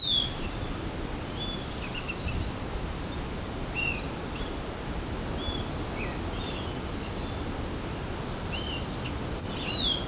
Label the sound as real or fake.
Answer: real